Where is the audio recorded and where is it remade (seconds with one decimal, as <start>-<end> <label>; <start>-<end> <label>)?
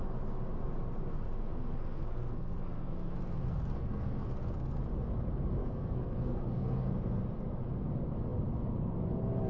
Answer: 0.0-1.4 recorded; 1.4-4.8 remade; 4.8-5.6 recorded; 5.6-6.9 remade; 6.9-9.5 recorded